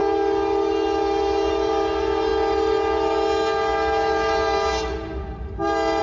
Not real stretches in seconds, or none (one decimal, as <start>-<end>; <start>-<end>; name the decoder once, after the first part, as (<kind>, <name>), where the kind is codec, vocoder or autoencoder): none